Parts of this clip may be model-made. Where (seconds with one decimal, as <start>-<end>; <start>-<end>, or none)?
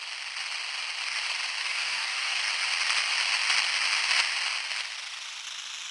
1.6-2.4